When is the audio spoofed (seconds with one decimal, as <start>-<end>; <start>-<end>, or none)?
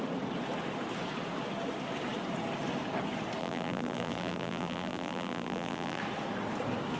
3.4-6.0